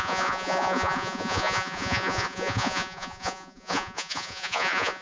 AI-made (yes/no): yes